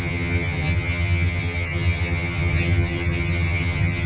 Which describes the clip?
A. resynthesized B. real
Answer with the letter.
A